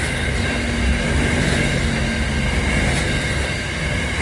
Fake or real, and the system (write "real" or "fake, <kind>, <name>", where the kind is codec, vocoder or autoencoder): real